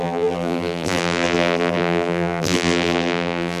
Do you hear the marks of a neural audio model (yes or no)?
yes